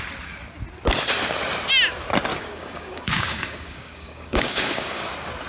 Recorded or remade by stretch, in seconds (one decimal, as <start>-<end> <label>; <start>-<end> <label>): 0.0-2.3 recorded; 2.3-5.1 remade; 5.1-5.5 recorded